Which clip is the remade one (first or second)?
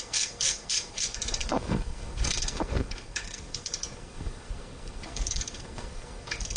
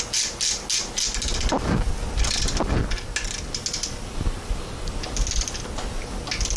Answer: first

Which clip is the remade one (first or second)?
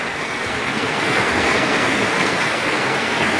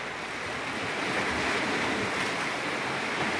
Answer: first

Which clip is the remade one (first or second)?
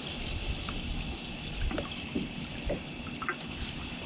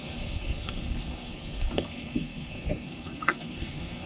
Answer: second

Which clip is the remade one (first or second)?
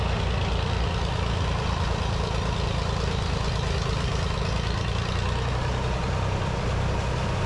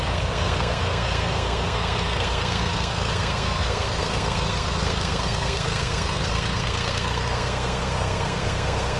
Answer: second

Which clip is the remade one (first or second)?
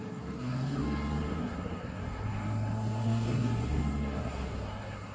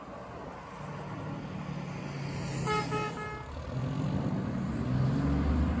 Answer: first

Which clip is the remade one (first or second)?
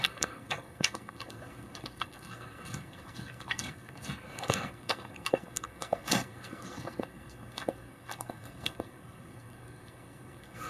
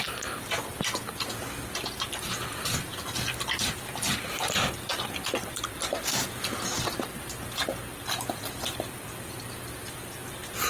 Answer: first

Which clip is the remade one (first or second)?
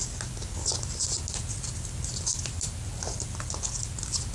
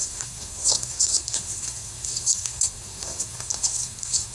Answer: second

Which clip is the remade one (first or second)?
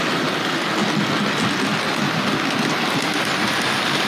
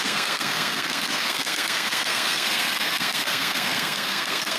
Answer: second